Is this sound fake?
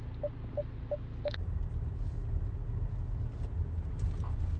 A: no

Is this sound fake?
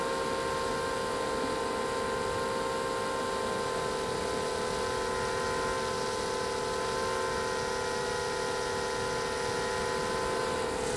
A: no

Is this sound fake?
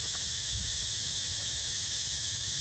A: yes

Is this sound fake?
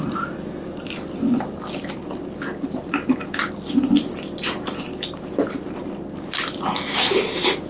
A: no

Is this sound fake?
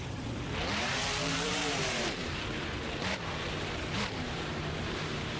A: yes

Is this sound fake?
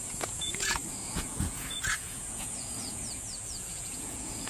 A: yes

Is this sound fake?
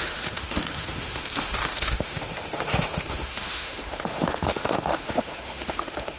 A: yes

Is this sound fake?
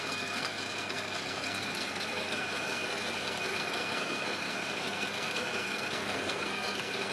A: yes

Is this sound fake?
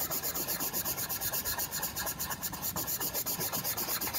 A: no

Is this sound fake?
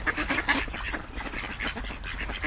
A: no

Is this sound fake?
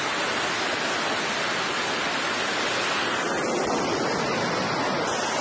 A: no